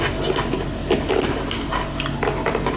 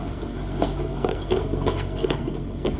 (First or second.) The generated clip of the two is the second